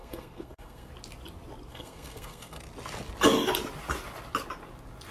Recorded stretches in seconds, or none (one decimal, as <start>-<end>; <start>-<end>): 0.9-1.7; 2.6-5.1